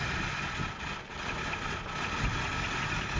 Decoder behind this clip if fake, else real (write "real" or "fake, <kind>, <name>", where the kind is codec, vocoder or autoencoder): real